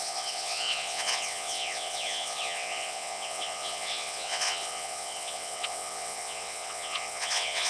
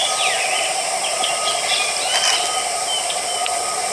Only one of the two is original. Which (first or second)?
second